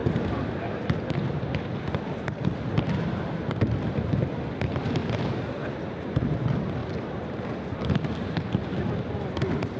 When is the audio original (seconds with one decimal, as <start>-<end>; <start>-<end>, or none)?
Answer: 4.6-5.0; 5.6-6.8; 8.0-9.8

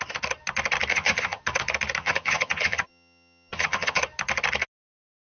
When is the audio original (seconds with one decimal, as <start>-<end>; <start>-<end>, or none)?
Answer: 0.0-0.9; 1.4-2.0; 4.0-5.3

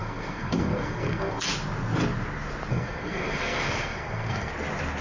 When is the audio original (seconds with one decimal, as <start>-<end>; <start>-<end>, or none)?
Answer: 1.5-2.7; 4.5-5.0

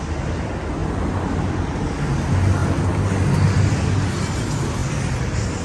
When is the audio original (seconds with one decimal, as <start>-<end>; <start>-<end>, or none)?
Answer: 0.0-0.8; 1.4-4.8